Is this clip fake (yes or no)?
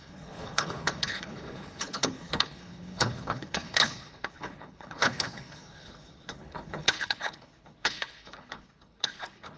yes